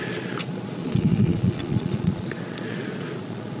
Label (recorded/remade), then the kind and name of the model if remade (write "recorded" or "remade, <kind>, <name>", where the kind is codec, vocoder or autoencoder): remade, vocoder, Vocos